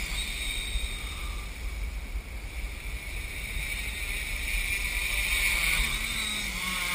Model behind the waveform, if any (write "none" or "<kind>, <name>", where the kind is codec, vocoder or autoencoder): none